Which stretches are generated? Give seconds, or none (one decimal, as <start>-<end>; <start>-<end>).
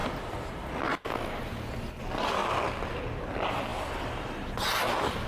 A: none